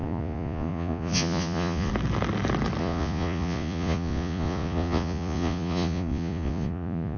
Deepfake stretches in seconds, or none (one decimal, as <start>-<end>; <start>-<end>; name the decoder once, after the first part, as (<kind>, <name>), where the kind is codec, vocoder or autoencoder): 0.0-1.9 (vocoder, Vocos); 2.8-7.2